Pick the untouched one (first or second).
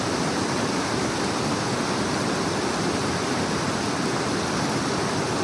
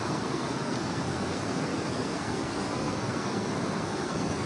first